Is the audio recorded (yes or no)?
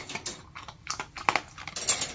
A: yes